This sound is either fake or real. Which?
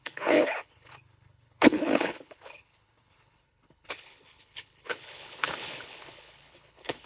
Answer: fake